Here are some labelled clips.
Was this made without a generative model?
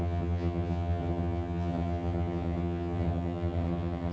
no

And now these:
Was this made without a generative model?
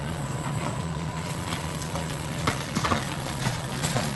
no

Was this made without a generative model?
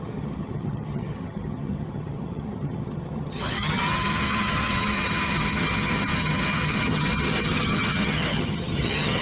no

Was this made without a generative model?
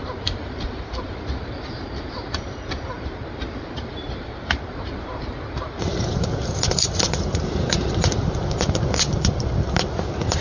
no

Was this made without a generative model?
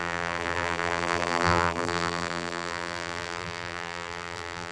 no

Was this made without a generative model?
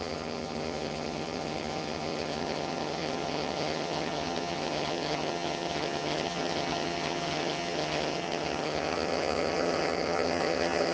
no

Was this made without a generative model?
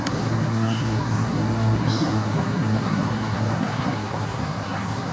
no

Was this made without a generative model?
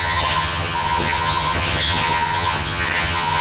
no